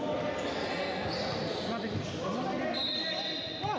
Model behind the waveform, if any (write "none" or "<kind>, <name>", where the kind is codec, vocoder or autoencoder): none